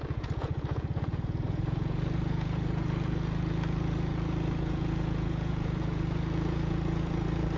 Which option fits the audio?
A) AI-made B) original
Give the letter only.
A